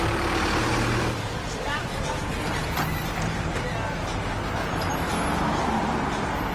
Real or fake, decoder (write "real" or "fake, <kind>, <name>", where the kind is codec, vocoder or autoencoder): real